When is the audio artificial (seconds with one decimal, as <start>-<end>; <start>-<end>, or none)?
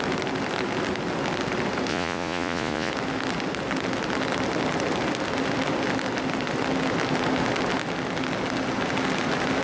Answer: 1.9-2.9